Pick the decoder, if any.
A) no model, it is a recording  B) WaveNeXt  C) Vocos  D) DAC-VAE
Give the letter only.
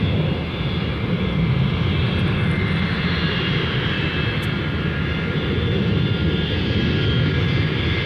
A